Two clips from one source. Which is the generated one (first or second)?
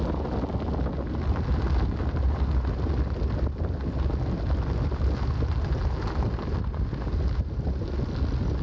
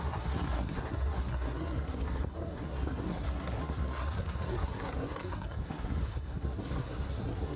second